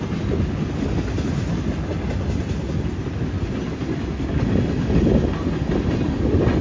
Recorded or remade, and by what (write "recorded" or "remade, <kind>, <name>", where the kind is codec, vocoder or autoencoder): recorded